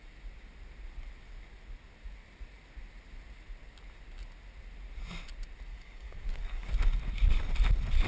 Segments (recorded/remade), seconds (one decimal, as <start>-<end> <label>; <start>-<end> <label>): 0.0-5.7 recorded; 5.7-6.7 remade; 6.7-8.1 recorded